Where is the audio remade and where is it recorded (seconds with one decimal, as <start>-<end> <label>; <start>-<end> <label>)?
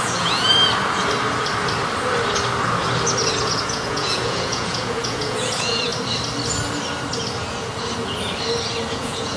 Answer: 0.0-0.5 remade; 0.5-3.4 recorded; 3.4-5.9 remade; 5.9-8.9 recorded; 8.9-9.4 remade